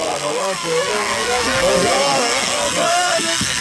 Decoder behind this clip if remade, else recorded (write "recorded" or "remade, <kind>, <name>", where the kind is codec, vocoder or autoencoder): remade, codec, SNAC